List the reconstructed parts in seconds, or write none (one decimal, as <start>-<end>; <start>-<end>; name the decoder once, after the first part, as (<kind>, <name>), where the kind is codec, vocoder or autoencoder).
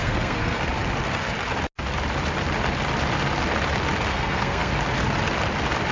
0.0-0.6 (codec, SNAC); 4.1-4.7